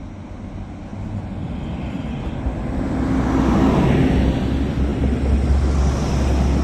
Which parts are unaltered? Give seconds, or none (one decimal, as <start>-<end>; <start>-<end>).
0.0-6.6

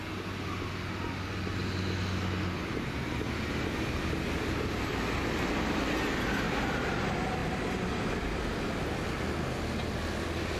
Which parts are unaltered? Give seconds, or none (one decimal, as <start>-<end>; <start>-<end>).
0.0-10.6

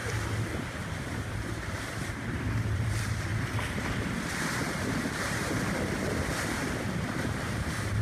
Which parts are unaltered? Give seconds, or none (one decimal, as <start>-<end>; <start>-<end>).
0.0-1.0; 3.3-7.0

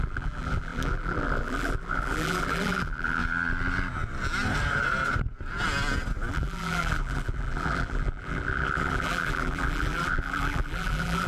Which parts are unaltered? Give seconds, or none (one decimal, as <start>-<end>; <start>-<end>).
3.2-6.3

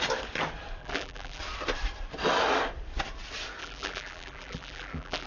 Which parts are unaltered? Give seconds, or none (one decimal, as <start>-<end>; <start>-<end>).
0.0-0.8; 1.4-3.6